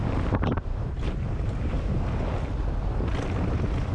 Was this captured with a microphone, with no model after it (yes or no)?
yes